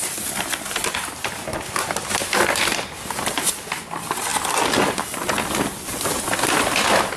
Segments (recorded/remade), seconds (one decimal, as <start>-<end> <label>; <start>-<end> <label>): 0.0-7.2 recorded